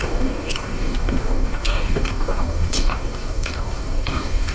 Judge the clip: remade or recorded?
remade